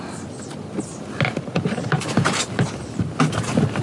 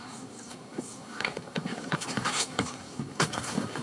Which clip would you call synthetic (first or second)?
second